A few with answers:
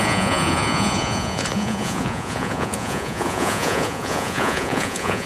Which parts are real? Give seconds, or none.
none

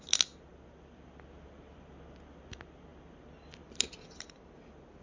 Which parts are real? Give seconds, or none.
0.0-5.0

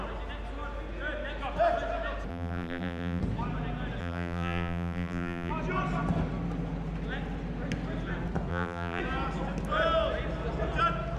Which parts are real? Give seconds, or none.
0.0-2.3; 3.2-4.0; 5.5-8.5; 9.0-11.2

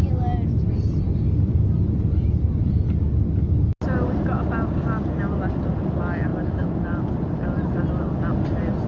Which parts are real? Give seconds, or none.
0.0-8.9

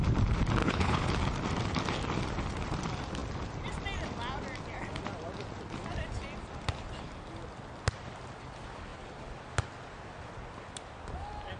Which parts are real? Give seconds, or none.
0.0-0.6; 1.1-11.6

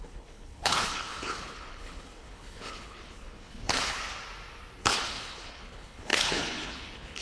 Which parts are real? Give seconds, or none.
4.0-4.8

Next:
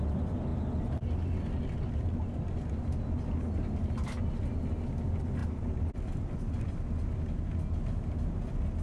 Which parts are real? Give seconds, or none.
0.0-8.8